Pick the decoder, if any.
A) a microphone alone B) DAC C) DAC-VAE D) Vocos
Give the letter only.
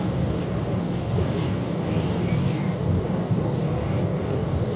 B